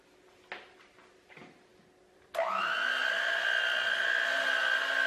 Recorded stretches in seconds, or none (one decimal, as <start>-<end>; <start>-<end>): 0.0-5.1